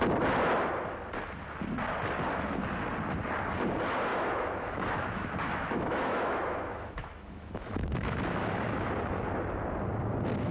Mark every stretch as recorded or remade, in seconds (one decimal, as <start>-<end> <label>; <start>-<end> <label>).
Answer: 0.0-4.1 recorded; 4.1-8.9 remade; 8.9-10.5 recorded